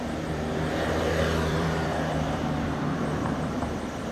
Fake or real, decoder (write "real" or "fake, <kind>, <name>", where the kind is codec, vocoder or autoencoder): fake, vocoder, BigVGAN v2